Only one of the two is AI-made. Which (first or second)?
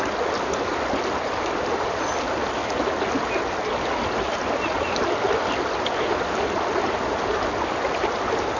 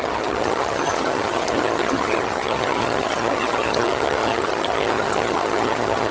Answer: second